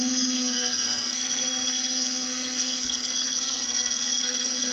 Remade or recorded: remade